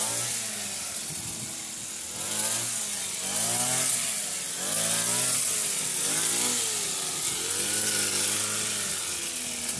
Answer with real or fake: real